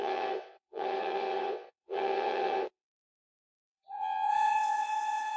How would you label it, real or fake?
fake